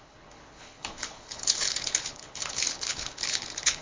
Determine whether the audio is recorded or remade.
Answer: remade